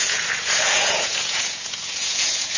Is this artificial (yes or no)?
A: yes